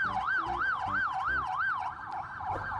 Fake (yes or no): no